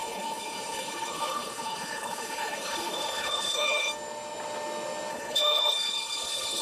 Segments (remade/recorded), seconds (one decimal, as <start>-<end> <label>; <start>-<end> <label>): 0.0-3.9 remade; 3.9-5.1 recorded; 5.1-6.6 remade